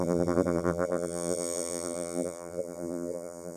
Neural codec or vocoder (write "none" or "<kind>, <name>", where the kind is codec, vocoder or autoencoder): vocoder, BigVGAN v2